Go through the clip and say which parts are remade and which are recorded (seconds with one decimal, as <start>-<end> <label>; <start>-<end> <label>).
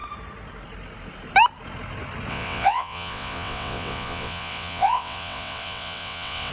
0.0-2.3 recorded; 2.3-6.5 remade